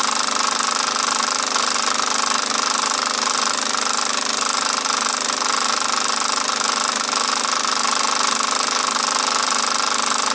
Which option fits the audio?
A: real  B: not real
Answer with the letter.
A